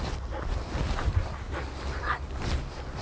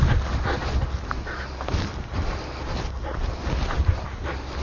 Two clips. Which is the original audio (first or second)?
second